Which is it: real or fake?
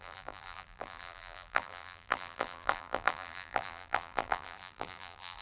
fake